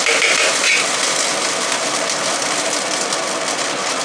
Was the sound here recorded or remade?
recorded